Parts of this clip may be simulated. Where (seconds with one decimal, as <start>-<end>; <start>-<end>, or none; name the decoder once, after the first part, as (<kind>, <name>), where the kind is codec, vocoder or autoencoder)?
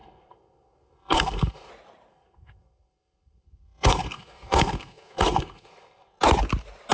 0.0-1.7 (codec, SNAC); 2.1-6.2